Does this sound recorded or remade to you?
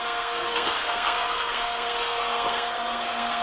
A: remade